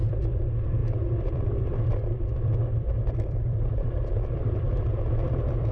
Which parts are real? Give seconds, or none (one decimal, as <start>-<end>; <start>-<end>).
none

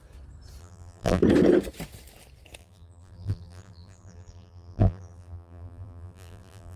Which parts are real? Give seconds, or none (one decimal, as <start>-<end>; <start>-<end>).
0.0-0.6; 1.2-2.6

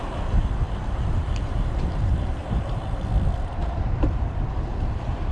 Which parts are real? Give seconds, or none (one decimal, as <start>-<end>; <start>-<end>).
3.0-3.6; 4.8-5.3